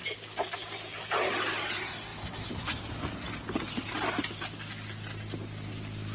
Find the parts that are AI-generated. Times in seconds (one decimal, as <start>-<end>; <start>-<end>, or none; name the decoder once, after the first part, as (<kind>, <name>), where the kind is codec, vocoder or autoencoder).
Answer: none